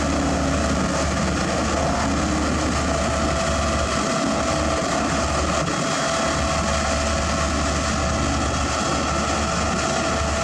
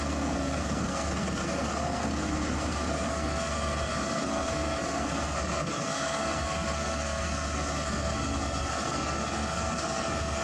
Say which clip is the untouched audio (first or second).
first